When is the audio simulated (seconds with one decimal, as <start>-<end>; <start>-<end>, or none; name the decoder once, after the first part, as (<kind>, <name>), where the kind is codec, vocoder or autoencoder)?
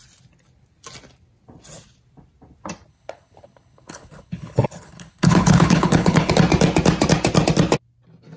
2.9-6.3 (codec, HILCodec)